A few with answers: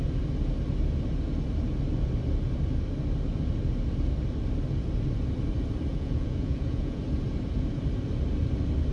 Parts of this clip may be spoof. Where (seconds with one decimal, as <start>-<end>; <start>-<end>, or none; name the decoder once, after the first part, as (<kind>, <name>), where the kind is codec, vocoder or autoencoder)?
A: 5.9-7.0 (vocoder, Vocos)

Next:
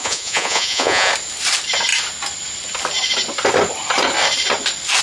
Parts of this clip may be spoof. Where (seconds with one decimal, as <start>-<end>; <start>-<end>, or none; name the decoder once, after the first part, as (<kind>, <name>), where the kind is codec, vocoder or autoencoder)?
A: 0.0-1.1 (vocoder, Vocos)

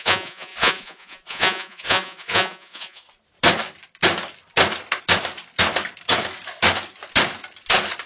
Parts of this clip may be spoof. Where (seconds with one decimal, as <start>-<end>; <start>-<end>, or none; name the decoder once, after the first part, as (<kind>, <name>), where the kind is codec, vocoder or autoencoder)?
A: 0.0-3.0 (vocoder, Vocos)